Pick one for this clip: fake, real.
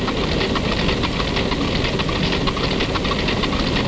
real